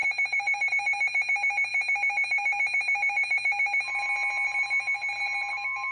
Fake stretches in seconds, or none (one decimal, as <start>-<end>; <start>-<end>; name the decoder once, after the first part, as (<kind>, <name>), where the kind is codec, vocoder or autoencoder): 0.0-0.7 (vocoder, BigVGAN v2)